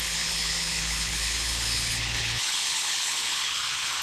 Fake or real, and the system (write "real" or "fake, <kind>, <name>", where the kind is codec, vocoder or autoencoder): fake, codec, HILCodec